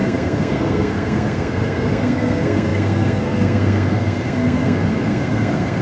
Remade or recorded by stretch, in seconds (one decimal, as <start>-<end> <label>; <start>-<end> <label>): 0.0-5.8 remade